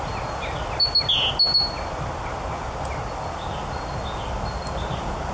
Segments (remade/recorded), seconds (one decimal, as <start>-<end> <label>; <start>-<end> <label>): 0.0-5.3 recorded